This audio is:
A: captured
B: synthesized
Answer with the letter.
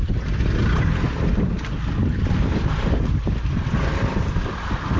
A